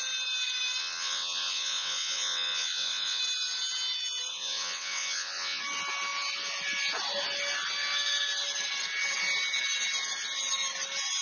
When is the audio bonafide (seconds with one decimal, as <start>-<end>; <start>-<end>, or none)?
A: 0.0-0.8; 3.2-4.3; 5.6-11.2